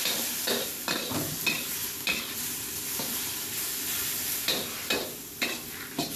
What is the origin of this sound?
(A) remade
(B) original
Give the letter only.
B